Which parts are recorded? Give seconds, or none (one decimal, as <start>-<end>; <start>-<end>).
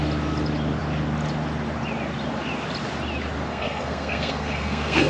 0.0-3.5